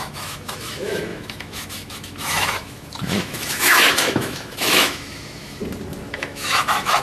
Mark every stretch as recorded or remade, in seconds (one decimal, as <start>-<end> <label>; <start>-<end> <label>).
0.0-5.6 remade; 5.6-6.1 recorded; 6.1-7.0 remade